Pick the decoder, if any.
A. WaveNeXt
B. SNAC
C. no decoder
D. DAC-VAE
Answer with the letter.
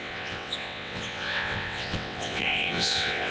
A